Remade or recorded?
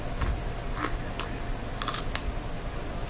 recorded